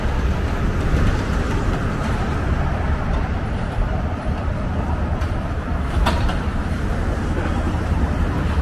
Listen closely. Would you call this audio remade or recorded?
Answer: remade